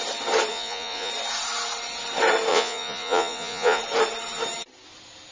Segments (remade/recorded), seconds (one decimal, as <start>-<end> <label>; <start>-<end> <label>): 0.0-0.5 recorded; 0.5-1.1 remade; 1.1-2.5 recorded; 2.5-3.8 remade; 3.8-5.3 recorded